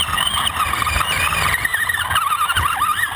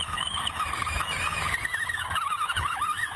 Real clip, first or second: first